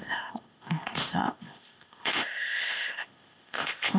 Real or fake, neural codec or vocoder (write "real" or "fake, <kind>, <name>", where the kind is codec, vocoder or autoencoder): fake, codec, ZipCodec